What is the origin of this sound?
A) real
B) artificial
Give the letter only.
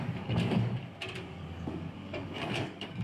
B